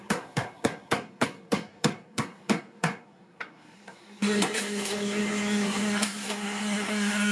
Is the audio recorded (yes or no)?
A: no